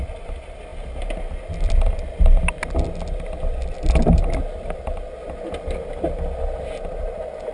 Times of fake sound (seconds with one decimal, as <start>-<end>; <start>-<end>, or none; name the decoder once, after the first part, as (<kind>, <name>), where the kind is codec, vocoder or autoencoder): none